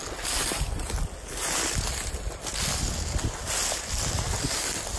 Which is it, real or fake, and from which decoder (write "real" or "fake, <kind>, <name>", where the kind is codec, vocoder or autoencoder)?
real